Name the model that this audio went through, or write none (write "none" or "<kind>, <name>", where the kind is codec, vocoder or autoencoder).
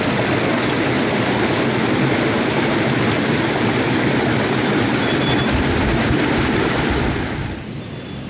none